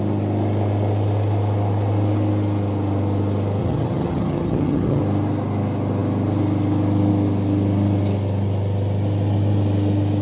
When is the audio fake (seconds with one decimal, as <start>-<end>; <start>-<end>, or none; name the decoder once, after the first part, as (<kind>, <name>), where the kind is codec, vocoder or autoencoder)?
3.6-5.0 (vocoder, HiFi-GAN)